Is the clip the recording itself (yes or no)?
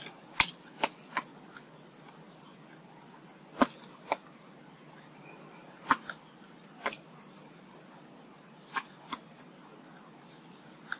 yes